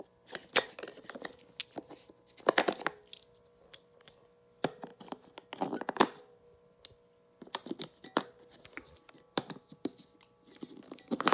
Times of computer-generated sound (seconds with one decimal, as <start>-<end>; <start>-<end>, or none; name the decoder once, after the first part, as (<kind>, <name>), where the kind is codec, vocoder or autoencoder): none